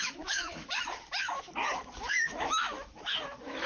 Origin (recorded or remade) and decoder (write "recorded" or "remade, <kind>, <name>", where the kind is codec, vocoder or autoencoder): remade, autoencoder, DAC-VAE